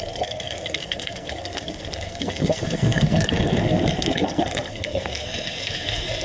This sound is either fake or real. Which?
fake